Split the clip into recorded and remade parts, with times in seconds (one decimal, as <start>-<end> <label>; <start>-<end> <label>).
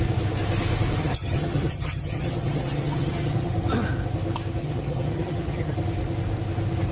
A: 0.0-1.0 recorded; 1.0-3.5 remade; 3.5-4.6 recorded; 4.6-5.7 remade; 5.7-6.9 recorded